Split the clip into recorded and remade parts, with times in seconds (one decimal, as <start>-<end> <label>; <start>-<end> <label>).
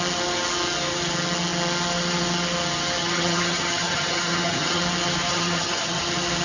0.0-3.0 recorded; 3.0-4.8 remade; 4.8-5.3 recorded; 5.3-6.0 remade; 6.0-6.4 recorded